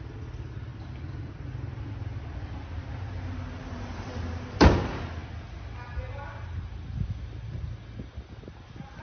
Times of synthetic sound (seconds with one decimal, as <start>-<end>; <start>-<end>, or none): none